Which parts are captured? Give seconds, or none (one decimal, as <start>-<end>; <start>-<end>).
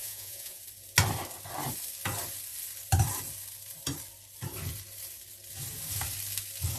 0.6-6.8